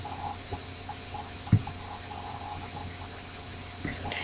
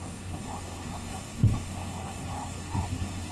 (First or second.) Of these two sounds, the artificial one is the second